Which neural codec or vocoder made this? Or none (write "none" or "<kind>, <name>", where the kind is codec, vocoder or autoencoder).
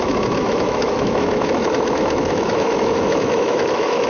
autoencoder, DAC-VAE